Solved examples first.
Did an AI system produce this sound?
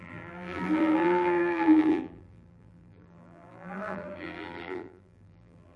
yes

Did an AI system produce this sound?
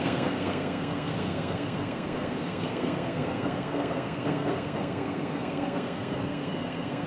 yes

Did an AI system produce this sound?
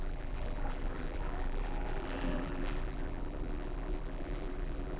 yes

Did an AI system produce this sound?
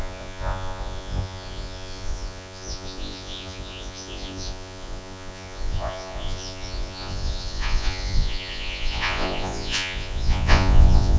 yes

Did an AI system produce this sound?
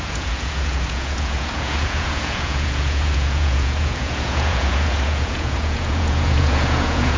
yes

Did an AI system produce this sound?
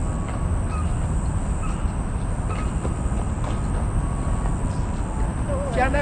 no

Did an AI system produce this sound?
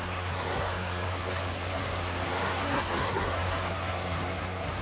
yes